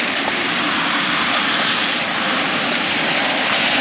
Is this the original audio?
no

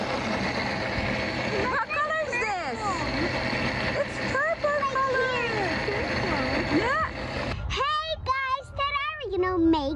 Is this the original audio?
yes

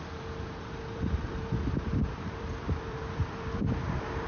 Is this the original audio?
no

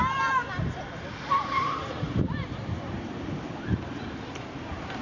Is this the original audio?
no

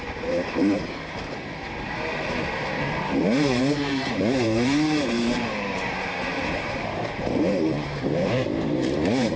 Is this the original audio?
no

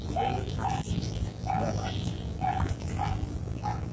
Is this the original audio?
no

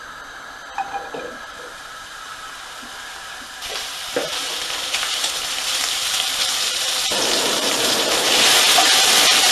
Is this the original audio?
no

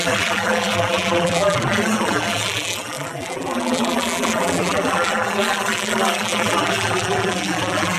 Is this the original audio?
no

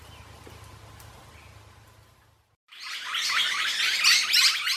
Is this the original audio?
yes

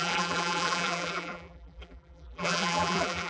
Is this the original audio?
no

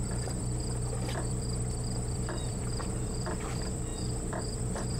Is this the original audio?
no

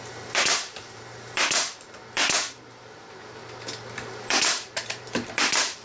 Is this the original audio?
no